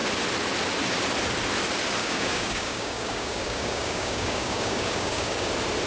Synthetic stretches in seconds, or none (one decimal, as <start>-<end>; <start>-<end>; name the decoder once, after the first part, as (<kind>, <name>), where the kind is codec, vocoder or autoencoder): 2.0-5.5 (codec, DAC)